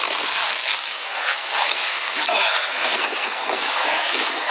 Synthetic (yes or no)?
yes